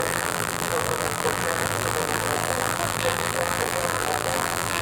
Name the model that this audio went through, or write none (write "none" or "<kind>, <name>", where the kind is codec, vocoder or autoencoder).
vocoder, BigVGAN v2